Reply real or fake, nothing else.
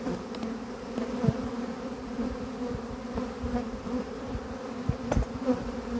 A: fake